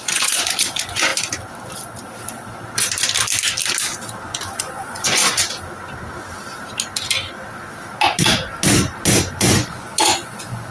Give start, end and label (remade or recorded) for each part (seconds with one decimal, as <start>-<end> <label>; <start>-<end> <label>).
0.0-1.1 remade; 1.1-4.6 recorded; 4.6-5.2 remade; 5.2-9.2 recorded; 9.2-10.7 remade